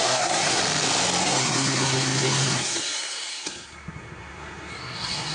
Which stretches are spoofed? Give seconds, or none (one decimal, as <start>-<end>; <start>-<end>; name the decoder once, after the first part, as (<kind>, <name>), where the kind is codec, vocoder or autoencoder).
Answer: 0.0-0.6 (codec, SNAC); 1.2-5.3